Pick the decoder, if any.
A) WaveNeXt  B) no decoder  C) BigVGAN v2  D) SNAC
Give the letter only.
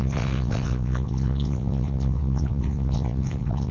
A